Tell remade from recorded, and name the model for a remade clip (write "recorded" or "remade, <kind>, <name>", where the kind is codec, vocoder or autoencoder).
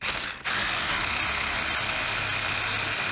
recorded